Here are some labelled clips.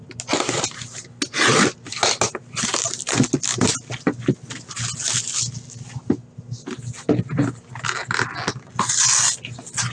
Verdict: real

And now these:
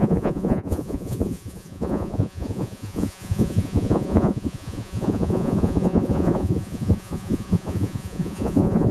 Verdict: fake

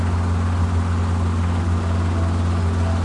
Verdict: real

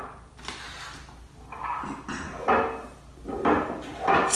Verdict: real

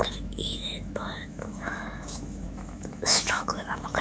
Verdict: fake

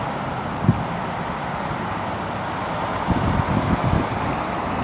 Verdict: real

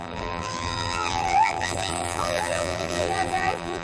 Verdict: fake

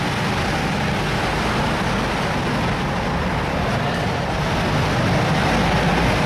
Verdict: real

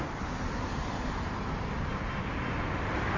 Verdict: real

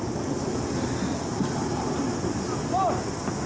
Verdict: real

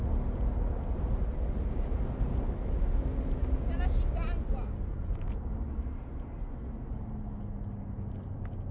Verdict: real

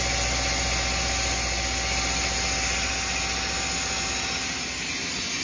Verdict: real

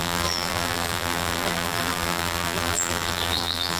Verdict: fake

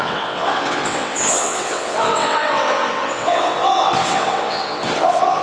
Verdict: fake